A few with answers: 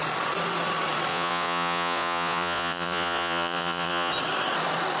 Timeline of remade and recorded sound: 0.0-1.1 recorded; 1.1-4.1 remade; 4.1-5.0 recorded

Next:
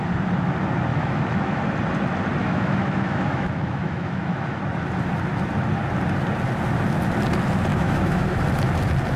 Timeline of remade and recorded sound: 0.0-0.9 recorded; 0.9-1.6 remade; 1.6-2.4 recorded; 2.4-4.6 remade; 4.6-7.7 recorded; 7.7-8.4 remade; 8.4-9.2 recorded

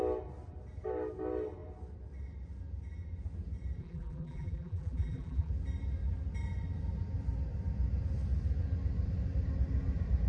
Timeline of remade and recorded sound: 0.0-3.8 recorded; 3.8-5.5 remade; 5.5-10.3 recorded

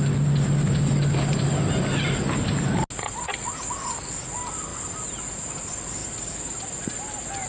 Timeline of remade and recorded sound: 0.0-7.5 recorded

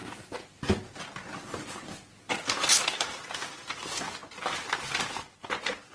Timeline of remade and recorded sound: 0.0-5.9 recorded

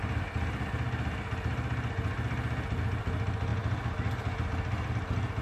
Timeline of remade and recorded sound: 0.0-5.4 recorded

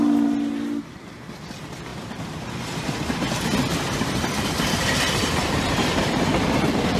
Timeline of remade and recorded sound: 0.0-1.9 recorded; 1.9-2.6 remade; 2.6-7.0 recorded